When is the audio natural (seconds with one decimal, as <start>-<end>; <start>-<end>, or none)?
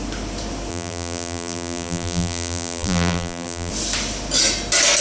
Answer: 0.0-0.7; 3.7-5.0